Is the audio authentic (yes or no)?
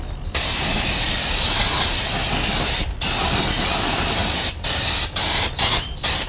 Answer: no